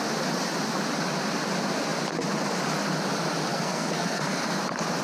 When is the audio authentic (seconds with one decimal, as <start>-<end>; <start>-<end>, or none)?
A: 0.0-3.5; 4.6-5.0